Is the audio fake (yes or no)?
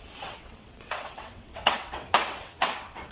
yes